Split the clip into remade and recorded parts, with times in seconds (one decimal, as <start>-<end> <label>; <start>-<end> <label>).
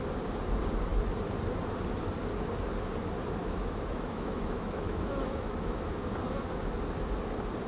0.0-3.4 recorded; 3.4-5.8 remade; 5.8-7.7 recorded